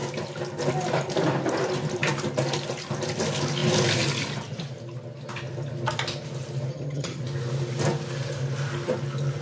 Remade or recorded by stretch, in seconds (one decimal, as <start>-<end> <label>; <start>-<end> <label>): 0.0-6.7 recorded; 6.7-7.2 remade; 7.2-9.4 recorded